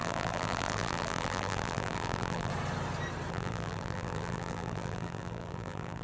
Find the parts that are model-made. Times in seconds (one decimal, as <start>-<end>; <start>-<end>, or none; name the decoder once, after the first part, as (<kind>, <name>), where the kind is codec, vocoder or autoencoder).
0.0-2.5 (vocoder, BigVGAN v2); 3.3-6.0